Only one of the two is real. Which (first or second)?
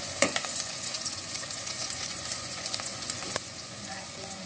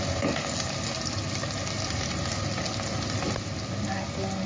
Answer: second